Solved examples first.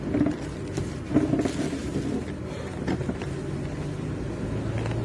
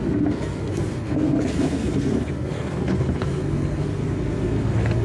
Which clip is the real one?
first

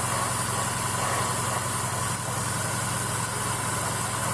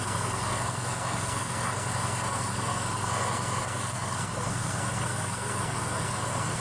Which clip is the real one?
first